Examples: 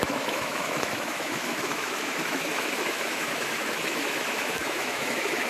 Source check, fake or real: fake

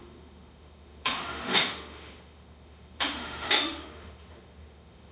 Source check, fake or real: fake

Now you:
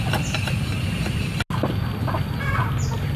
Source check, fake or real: real